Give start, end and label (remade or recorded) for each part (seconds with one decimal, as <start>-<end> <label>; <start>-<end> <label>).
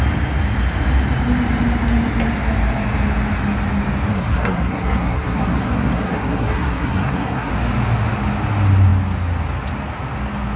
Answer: 0.0-4.1 recorded; 4.1-7.5 remade; 7.5-10.6 recorded